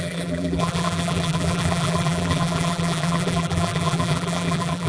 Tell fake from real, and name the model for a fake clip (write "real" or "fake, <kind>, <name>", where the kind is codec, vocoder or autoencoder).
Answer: fake, vocoder, BigVGAN v2